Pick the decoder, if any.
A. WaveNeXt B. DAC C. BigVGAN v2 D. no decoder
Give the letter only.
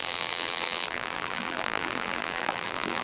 C